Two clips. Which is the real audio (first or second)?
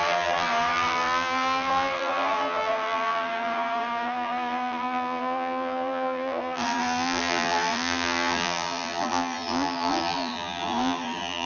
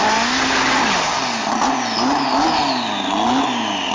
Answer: second